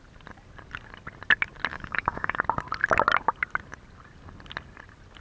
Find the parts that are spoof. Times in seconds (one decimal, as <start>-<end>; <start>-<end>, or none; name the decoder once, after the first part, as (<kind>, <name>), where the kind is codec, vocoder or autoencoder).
1.7-2.4 (autoencoder, DAC-VAE)